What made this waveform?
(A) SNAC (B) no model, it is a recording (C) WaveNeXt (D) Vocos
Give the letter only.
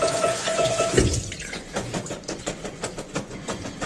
D